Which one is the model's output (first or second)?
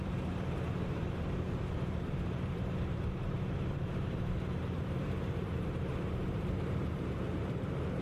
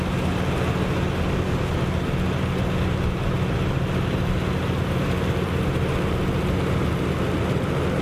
first